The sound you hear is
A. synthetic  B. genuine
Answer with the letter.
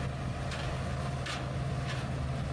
B